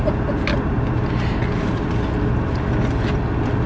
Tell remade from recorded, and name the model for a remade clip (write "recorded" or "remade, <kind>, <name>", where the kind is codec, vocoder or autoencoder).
recorded